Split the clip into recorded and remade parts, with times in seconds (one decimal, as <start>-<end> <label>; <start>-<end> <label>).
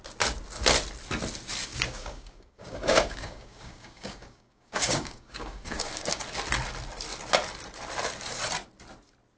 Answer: 0.0-1.7 recorded; 1.7-6.2 remade; 6.2-9.4 recorded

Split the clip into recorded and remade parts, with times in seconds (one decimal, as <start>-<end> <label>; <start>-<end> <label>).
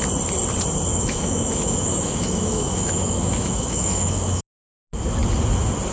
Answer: 0.0-0.9 recorded; 0.9-4.4 remade; 4.4-5.9 recorded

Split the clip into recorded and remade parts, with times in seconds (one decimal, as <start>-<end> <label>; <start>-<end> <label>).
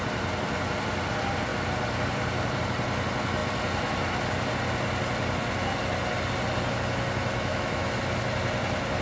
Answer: 0.0-7.3 recorded; 7.3-7.9 remade; 7.9-9.0 recorded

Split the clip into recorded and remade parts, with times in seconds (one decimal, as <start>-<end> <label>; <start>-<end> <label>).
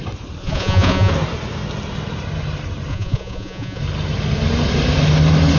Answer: 0.0-0.4 recorded; 0.4-1.1 remade; 1.1-2.9 recorded; 2.9-3.8 remade; 3.8-5.6 recorded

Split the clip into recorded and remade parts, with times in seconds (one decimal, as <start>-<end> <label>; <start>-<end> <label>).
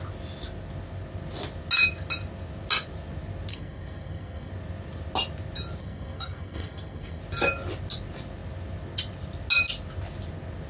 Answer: 0.0-3.5 recorded; 3.5-4.5 remade; 4.5-5.8 recorded; 5.8-7.2 remade; 7.2-10.7 recorded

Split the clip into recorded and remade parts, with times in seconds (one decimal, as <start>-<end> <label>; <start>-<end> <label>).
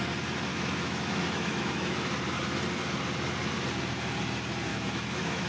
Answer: 0.0-0.5 recorded; 0.5-2.1 remade; 2.1-4.7 recorded; 4.7-5.5 remade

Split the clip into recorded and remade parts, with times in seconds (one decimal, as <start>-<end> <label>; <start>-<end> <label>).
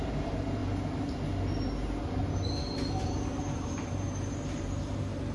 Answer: 0.0-0.6 remade; 0.6-2.6 recorded; 2.6-5.3 remade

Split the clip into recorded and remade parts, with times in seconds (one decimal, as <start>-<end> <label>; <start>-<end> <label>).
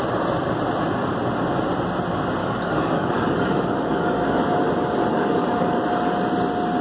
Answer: 0.0-2.4 recorded; 2.4-4.4 remade; 4.4-5.1 recorded; 5.1-5.8 remade; 5.8-6.8 recorded